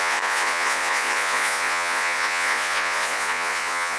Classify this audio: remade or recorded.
remade